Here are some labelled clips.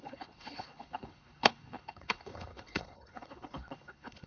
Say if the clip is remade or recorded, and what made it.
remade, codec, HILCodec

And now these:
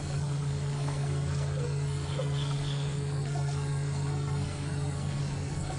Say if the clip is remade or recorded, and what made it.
remade, codec, SNAC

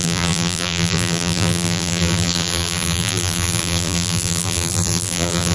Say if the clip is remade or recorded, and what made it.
remade, vocoder, BigVGAN v2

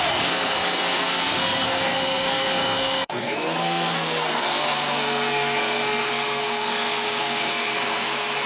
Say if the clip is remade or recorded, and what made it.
remade, codec, SNAC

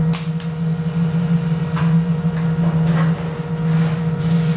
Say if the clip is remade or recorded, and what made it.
recorded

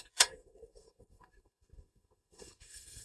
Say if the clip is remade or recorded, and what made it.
remade, codec, SNAC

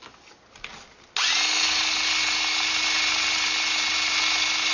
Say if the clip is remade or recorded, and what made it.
recorded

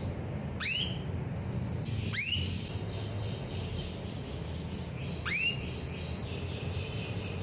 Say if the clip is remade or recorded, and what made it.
recorded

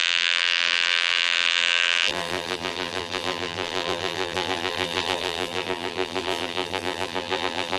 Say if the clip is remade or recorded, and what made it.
remade, vocoder, BigVGAN v2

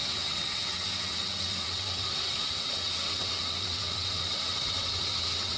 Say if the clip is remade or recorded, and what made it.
remade, vocoder, WaveNeXt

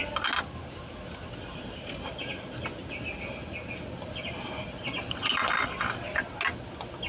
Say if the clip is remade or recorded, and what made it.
recorded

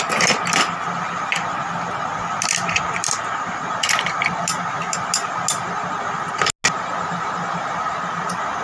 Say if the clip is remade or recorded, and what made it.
recorded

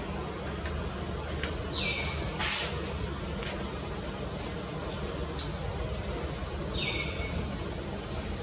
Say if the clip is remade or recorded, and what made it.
recorded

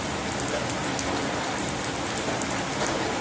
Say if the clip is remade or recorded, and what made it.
recorded